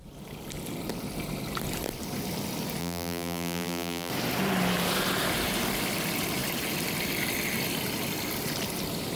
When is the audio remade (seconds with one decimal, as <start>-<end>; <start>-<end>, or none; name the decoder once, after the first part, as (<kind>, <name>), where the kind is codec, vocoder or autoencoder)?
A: 2.8-4.1 (vocoder, BigVGAN v2)